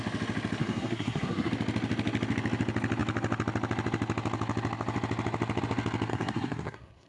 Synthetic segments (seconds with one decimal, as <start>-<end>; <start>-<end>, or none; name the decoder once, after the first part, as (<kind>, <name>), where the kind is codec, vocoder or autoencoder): 0.6-1.5 (codec, SNAC); 6.1-7.1